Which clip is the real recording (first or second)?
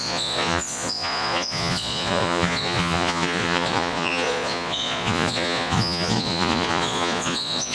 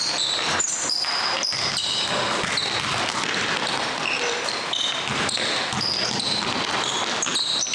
second